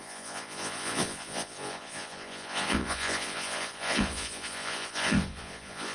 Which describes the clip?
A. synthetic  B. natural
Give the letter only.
A